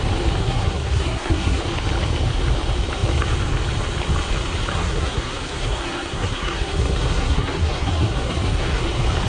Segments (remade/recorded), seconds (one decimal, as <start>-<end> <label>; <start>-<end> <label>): 0.0-0.4 recorded; 0.4-1.6 remade; 1.6-4.7 recorded; 4.7-8.8 remade; 8.8-9.3 recorded